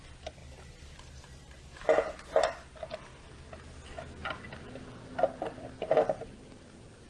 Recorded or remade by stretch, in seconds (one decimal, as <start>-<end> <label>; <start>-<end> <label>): 0.0-7.1 recorded